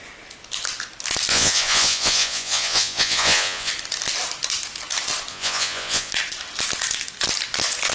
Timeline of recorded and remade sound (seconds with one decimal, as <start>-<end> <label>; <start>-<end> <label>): 0.0-1.3 recorded; 1.3-3.7 remade; 3.7-5.3 recorded; 5.3-6.1 remade; 6.1-7.9 recorded